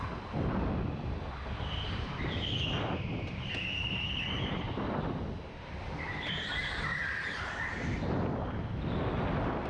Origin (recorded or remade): recorded